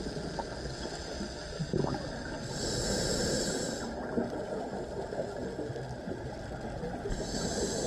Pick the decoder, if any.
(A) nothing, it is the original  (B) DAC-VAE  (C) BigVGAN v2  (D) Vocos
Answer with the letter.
A